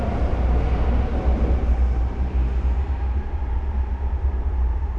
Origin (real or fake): real